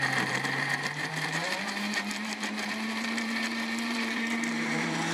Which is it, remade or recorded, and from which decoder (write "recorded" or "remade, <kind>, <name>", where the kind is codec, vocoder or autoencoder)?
remade, vocoder, BigVGAN v2